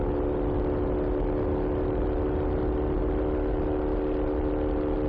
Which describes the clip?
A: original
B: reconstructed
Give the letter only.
A